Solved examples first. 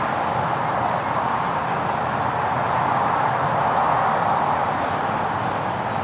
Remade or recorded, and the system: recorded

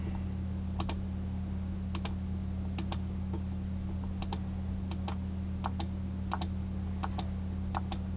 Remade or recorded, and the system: recorded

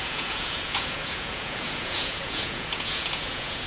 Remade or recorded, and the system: remade, vocoder, Vocos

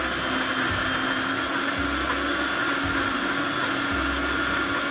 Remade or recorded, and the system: recorded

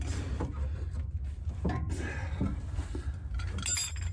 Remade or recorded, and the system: recorded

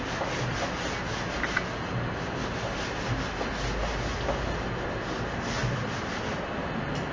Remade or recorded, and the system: recorded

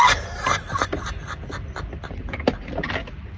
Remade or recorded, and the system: recorded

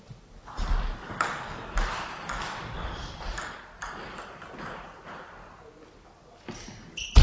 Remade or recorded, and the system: recorded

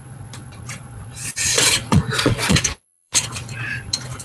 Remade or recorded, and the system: remade, vocoder, Vocos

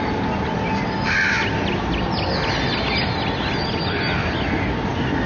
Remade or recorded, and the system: recorded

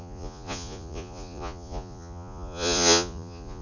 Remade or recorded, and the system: remade, vocoder, Vocos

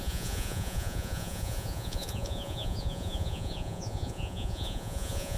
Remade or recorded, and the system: remade, vocoder, Vocos